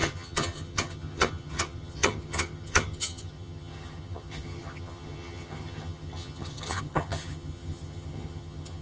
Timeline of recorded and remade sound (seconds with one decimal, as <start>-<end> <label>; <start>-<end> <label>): 0.0-8.8 remade